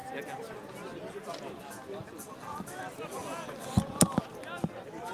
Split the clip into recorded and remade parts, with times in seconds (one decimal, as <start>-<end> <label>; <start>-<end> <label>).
0.0-5.1 recorded